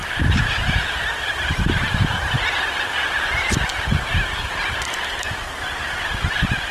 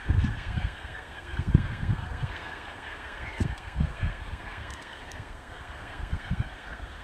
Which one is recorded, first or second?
first